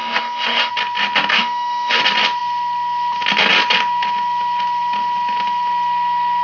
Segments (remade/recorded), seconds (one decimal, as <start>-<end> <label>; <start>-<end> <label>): 0.0-0.7 remade; 0.7-1.3 recorded; 1.3-2.0 remade; 2.0-6.4 recorded